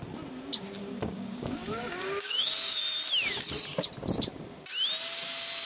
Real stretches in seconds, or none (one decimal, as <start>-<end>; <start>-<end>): 0.0-0.8; 2.8-5.7